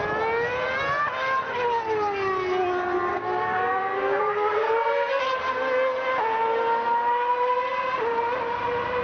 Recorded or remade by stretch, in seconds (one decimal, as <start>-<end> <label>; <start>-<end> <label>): 0.0-3.1 recorded; 3.1-5.2 remade; 5.2-9.0 recorded

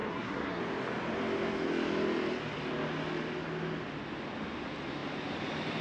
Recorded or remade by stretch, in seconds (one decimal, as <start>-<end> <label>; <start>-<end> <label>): 0.0-0.6 remade; 0.6-5.8 recorded

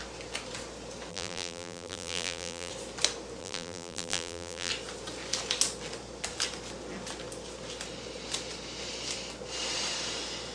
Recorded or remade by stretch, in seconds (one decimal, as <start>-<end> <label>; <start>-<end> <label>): 0.0-1.1 recorded; 1.1-2.7 remade; 2.7-3.4 recorded; 3.4-4.7 remade; 4.7-10.5 recorded